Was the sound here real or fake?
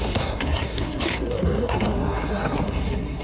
fake